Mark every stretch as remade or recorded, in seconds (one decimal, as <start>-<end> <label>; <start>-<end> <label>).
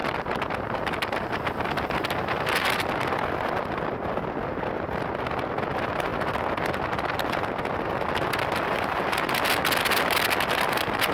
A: 0.0-11.1 recorded